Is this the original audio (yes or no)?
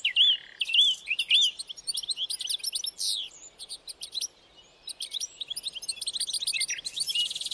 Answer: yes